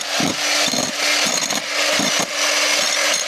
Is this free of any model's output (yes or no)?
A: yes